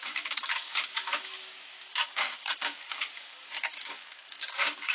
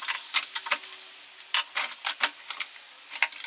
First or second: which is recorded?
second